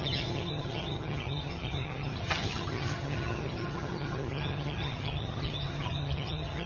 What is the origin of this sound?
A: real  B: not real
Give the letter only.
B